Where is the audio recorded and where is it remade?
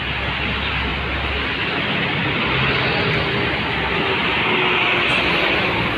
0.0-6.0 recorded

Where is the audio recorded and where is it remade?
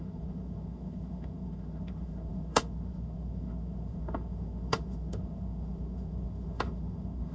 0.0-7.3 remade